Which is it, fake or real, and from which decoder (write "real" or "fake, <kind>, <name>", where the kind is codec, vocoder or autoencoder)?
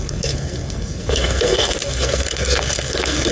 fake, codec, SNAC